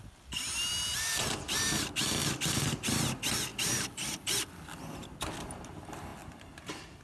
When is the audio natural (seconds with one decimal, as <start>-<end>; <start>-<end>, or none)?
0.0-2.2; 3.0-3.5; 4.6-7.0